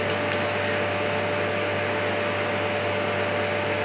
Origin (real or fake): real